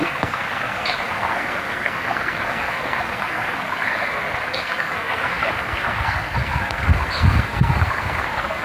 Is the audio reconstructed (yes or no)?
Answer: yes